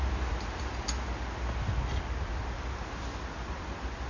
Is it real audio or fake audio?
real